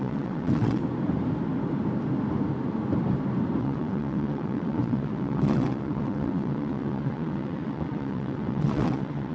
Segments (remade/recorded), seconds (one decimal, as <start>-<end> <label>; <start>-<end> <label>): 0.0-0.8 remade; 0.8-3.6 recorded; 3.6-9.3 remade